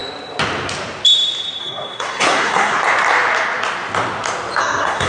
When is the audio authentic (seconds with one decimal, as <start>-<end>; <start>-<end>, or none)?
0.0-1.6; 2.7-4.6